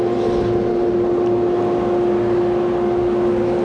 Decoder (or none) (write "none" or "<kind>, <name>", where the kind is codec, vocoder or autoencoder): none